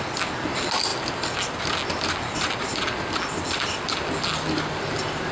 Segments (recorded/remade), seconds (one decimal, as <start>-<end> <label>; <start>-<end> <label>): 0.0-5.3 recorded